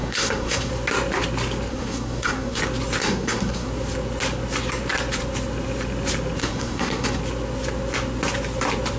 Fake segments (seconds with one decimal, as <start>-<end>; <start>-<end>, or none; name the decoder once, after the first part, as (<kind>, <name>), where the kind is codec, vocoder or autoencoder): 0.0-0.7 (codec, SNAC); 1.7-2.6; 3.0-3.7; 6.4-7.2